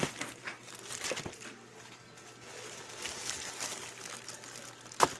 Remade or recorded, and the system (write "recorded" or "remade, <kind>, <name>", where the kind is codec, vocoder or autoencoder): recorded